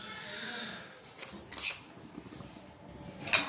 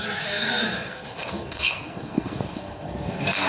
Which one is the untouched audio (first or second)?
first